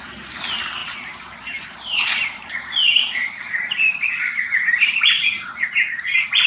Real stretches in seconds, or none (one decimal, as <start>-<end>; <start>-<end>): 0.0-0.8; 2.5-3.0; 4.4-6.5